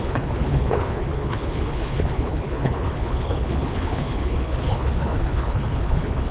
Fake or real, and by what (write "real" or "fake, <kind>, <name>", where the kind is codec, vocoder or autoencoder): fake, codec, HILCodec